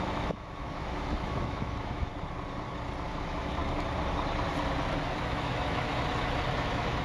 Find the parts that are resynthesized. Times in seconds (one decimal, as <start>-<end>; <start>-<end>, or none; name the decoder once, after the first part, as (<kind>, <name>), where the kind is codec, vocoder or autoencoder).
0.0-2.1 (autoencoder, DAC-VAE); 3.1-3.6; 5.2-5.9; 6.6-7.0